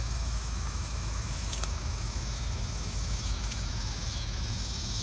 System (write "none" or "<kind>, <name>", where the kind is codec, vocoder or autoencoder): autoencoder, DAC-VAE